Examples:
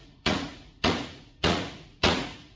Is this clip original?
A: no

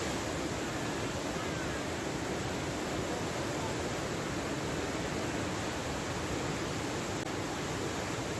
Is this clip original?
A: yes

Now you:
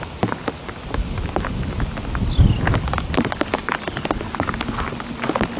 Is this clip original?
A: yes